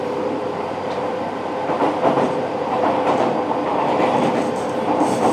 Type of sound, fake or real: fake